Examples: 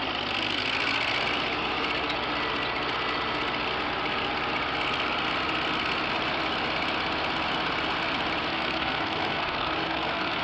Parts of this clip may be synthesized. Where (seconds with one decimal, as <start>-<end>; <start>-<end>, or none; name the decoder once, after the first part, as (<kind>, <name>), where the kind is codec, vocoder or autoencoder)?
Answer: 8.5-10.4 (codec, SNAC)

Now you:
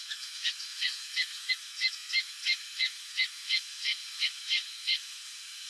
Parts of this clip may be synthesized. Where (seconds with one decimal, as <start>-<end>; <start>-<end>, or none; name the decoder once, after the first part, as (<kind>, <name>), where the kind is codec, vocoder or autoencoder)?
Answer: 0.0-5.7 (codec, SNAC)

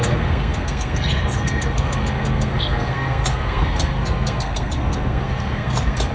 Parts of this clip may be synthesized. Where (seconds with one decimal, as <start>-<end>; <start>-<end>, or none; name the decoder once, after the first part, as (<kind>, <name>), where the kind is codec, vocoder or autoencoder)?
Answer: 0.0-6.1 (codec, SNAC)

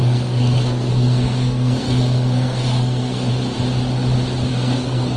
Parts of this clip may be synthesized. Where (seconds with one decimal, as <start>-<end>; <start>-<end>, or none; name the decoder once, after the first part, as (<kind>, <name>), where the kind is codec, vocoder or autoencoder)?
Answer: 0.0-3.3 (codec, SNAC); 4.5-5.2

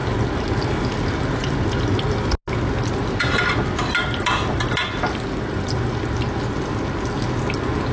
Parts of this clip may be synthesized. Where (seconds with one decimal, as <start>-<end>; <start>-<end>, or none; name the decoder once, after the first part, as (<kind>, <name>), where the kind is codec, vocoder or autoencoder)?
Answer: none

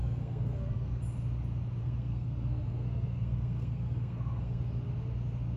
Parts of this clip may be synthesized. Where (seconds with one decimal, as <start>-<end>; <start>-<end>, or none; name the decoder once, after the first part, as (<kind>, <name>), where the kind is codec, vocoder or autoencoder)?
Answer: 0.0-1.0 (codec, SNAC); 1.8-4.6

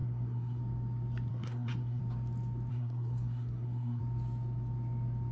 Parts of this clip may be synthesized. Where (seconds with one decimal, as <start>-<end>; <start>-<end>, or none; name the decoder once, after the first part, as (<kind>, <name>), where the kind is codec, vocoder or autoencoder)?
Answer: 0.0-0.6 (codec, SNAC); 1.3-2.0; 2.7-4.0